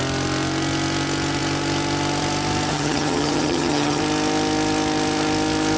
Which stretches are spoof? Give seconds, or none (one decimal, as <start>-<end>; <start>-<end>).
2.7-4.0